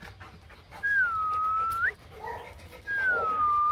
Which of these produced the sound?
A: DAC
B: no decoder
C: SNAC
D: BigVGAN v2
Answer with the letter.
B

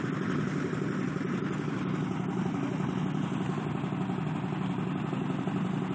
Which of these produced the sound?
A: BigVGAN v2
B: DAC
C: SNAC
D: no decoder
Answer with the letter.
D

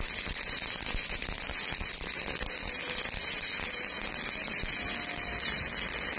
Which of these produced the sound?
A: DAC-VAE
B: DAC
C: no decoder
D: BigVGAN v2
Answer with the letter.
C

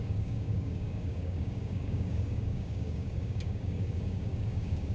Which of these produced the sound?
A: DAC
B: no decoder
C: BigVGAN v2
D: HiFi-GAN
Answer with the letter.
A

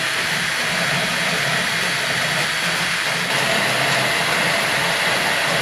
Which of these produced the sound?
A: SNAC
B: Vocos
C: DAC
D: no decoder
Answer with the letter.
D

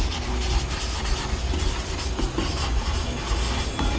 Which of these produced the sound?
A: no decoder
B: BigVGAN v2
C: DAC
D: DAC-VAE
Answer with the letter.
A